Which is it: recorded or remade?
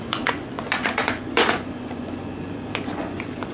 remade